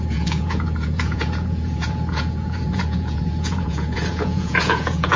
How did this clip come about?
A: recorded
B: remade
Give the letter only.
B